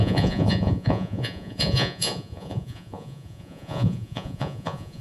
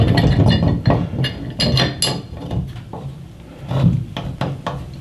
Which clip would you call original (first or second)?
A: second